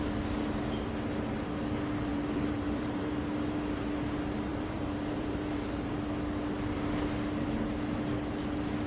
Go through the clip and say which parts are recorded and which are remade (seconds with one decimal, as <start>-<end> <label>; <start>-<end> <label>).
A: 0.0-2.1 recorded; 2.1-3.9 remade; 3.9-4.5 recorded; 4.5-5.9 remade; 5.9-8.9 recorded